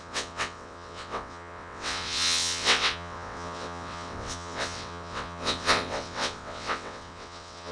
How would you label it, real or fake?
fake